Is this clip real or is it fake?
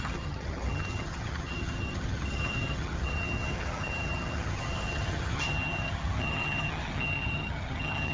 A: fake